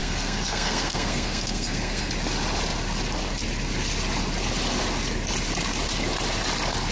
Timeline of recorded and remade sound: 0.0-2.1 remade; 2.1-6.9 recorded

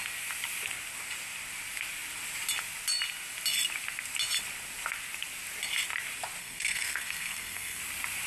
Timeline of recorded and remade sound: 0.0-6.4 recorded; 6.4-7.8 remade; 7.8-8.3 recorded

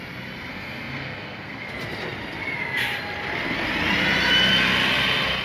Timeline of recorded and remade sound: 0.0-0.5 recorded; 0.5-1.7 remade; 1.7-5.4 recorded

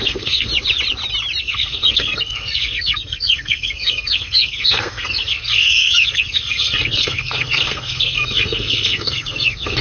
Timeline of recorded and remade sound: 0.0-0.5 remade; 0.5-1.4 recorded; 1.4-9.8 remade

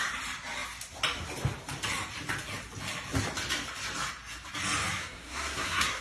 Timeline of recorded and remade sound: 0.0-5.0 recorded; 5.0-6.0 remade